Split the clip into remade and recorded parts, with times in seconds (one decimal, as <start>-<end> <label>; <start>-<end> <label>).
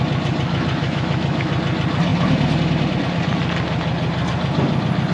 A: 0.0-0.8 recorded; 0.8-1.5 remade; 1.5-5.1 recorded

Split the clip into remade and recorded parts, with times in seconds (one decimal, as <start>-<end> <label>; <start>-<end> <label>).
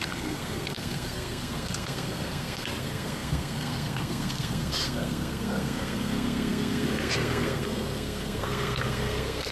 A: 0.0-9.5 remade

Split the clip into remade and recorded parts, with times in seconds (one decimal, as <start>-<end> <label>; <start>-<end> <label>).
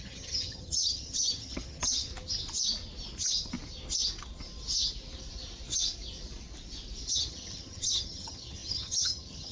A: 0.0-2.1 remade; 2.1-7.1 recorded; 7.1-9.5 remade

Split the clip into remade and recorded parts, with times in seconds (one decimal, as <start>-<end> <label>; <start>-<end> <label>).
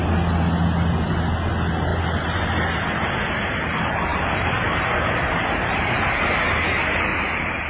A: 0.0-4.1 recorded; 4.1-6.2 remade; 6.2-7.1 recorded; 7.1-7.7 remade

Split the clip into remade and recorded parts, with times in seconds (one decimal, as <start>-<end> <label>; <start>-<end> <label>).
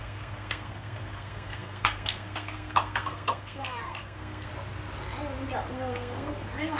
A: 0.0-4.5 remade; 4.5-5.7 recorded; 5.7-6.8 remade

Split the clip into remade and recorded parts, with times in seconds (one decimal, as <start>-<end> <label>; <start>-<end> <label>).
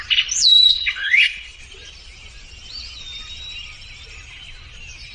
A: 0.0-0.7 recorded; 0.7-1.6 remade; 1.6-5.1 recorded